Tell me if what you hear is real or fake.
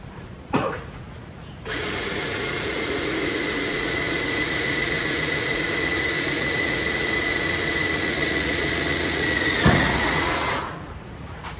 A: fake